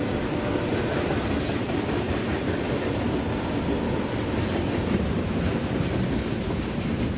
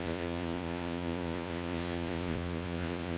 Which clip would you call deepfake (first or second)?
second